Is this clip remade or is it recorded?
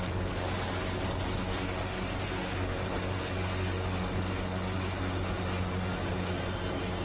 recorded